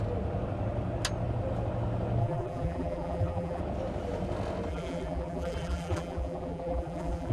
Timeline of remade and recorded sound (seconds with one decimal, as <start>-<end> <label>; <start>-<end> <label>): 0.0-2.2 recorded; 2.2-3.6 remade; 3.6-4.7 recorded; 4.7-7.3 remade